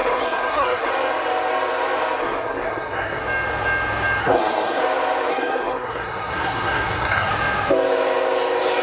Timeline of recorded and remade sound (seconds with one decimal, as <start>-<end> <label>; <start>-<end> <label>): 0.0-0.9 remade; 0.9-2.2 recorded; 2.2-3.2 remade; 3.2-4.2 recorded; 4.2-4.8 remade; 4.8-5.3 recorded; 5.3-7.3 remade; 7.3-8.8 recorded